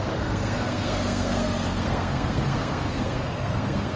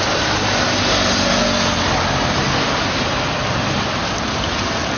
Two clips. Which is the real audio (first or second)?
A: second